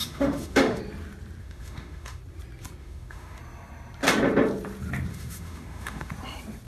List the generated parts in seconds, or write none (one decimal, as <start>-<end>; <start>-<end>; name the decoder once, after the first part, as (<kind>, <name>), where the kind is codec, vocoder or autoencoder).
0.0-0.8 (autoencoder, DAC-VAE); 1.4-2.2; 2.8-3.4; 5.1-6.1